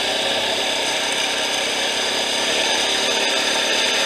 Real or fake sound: real